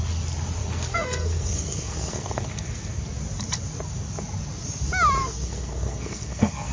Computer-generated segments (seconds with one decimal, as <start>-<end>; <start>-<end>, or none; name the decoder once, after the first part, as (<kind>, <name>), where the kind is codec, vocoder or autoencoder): 0.6-3.0 (codec, SNAC); 5.2-6.7